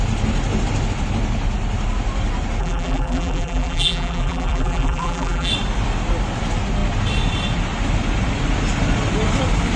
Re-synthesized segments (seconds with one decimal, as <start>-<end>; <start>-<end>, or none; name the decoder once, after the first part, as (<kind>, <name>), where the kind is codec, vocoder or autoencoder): 2.6-5.5 (vocoder, BigVGAN v2)